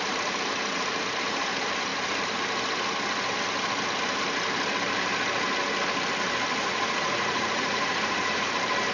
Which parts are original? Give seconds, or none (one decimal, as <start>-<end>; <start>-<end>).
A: 0.0-6.5; 8.5-8.9